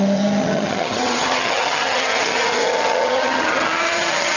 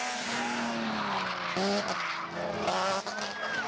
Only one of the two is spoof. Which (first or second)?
first